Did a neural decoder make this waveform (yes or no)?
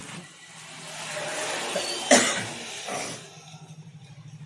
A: no